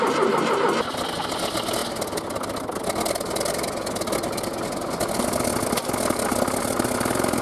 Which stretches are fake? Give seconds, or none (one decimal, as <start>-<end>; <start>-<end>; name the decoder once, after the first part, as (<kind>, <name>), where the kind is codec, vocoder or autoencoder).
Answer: none